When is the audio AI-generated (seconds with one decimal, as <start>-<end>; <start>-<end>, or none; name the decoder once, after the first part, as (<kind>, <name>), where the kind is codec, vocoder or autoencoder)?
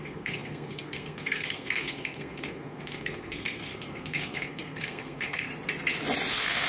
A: 0.0-5.5 (codec, SNAC); 6.3-6.7